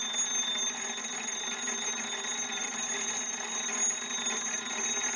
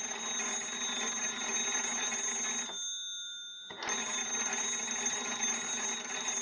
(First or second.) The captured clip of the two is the second